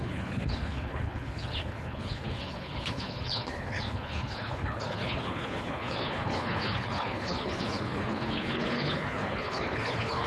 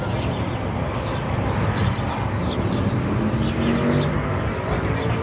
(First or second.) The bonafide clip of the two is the second